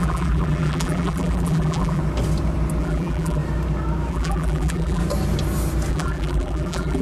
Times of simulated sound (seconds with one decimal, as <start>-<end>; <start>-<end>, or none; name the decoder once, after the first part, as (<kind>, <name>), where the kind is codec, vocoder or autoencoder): 0.0-2.0 (vocoder, BigVGAN v2); 2.8-3.4; 4.1-5.0; 5.9-7.0